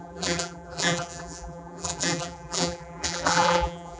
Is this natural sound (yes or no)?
no